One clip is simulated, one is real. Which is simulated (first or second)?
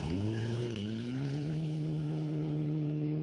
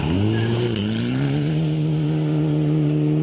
first